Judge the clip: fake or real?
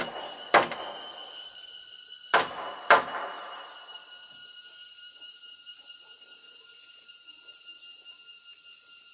fake